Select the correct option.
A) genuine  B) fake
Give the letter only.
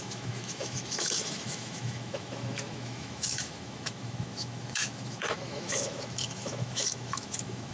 B